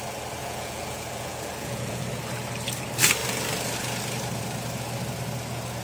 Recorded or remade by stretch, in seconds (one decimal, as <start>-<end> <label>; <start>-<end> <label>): 0.0-0.4 recorded; 0.4-2.1 remade; 2.1-5.8 recorded